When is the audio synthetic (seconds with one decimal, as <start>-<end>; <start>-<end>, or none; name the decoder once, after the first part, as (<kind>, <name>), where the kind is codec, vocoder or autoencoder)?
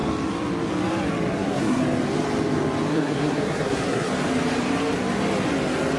1.3-1.8 (codec, SNAC); 2.9-4.1